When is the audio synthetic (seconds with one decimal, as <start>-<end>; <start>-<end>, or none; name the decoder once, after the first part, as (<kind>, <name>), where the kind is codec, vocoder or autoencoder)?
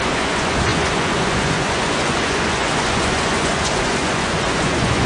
0.0-5.1 (vocoder, Vocos)